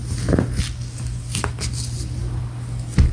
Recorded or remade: recorded